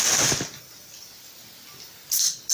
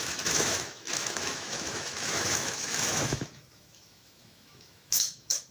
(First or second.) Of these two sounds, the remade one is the second